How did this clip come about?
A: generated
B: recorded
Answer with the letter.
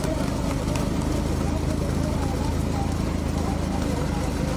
B